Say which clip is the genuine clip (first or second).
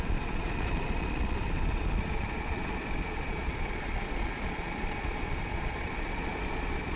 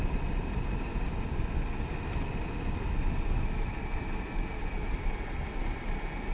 second